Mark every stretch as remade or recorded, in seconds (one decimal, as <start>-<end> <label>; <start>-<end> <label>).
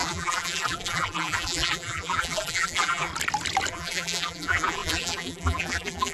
0.0-3.1 remade; 3.1-3.7 recorded; 3.7-6.1 remade